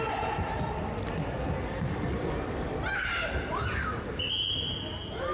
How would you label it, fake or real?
real